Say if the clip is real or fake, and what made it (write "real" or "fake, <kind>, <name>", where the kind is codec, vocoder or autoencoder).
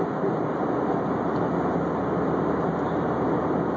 real